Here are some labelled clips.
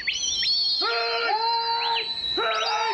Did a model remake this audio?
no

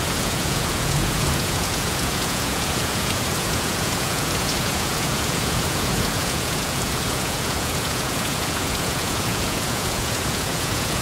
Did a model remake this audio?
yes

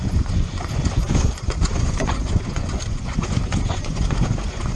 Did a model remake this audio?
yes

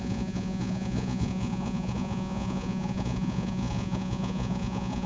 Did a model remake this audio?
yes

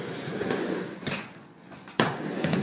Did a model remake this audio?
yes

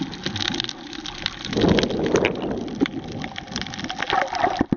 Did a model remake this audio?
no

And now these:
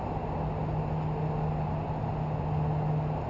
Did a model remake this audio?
no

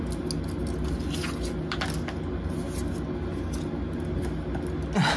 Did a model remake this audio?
no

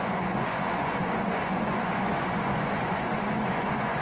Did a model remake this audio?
yes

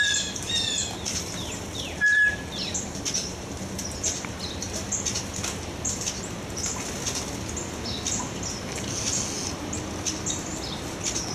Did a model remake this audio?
no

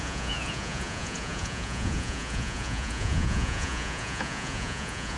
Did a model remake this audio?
yes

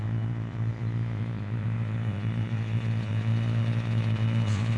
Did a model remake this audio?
yes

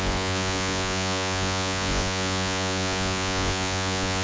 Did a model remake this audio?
yes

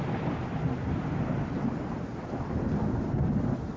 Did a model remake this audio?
no